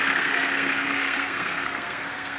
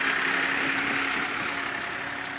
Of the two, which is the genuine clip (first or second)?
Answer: second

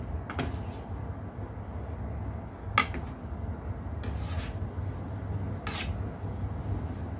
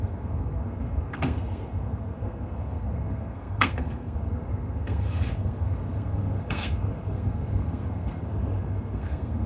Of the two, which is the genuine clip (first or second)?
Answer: first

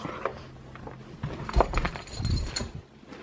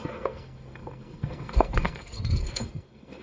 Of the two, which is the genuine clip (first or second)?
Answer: first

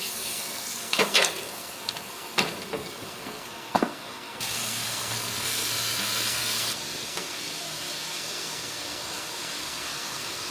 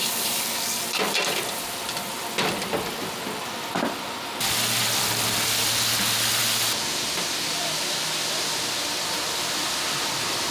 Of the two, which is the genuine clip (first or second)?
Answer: second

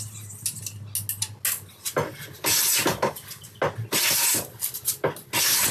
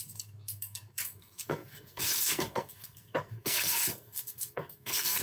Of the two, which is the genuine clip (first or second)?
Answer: first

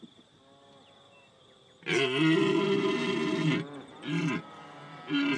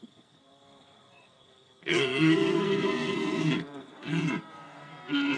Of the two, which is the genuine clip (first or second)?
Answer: first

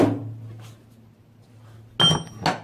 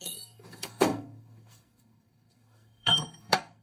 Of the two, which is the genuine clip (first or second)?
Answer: first